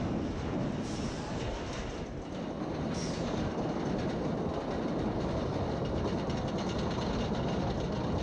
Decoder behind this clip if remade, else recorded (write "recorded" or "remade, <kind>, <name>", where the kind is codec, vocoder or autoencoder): recorded